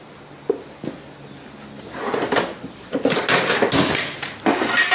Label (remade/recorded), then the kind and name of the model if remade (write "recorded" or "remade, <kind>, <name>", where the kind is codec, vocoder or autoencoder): recorded